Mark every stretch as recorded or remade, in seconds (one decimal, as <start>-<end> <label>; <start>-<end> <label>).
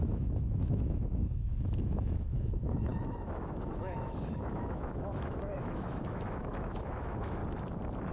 0.0-7.4 remade; 7.4-8.1 recorded